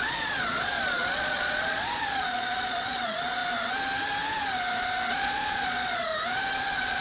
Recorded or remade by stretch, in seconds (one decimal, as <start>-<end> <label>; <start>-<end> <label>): 0.0-3.4 remade; 3.4-5.1 recorded; 5.1-6.1 remade; 6.1-6.6 recorded; 6.6-7.0 remade